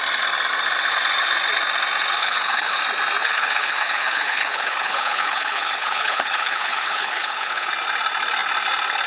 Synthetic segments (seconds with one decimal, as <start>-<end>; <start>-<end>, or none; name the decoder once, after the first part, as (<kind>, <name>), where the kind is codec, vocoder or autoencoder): 2.2-2.8 (codec, HILCodec); 3.2-7.7